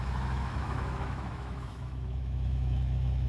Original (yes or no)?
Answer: no